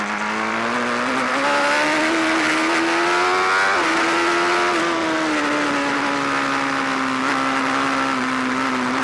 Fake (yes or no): no